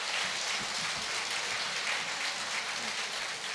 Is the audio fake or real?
real